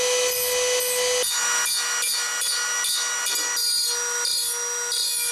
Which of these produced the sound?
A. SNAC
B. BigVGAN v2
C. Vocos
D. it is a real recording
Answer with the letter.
D